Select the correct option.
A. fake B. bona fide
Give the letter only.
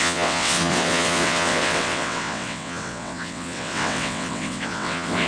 A